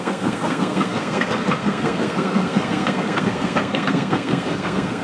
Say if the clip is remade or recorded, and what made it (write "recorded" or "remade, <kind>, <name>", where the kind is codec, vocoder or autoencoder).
remade, codec, SNAC